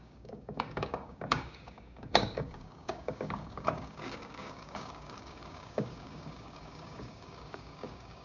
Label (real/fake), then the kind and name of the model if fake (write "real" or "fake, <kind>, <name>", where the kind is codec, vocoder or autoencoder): fake, codec, DAC